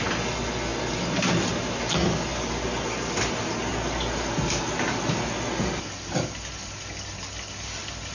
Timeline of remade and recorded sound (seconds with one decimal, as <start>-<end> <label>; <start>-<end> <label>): 0.0-8.1 recorded